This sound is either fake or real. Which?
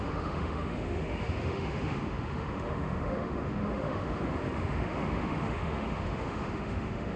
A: fake